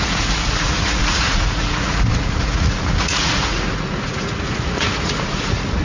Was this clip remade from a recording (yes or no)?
yes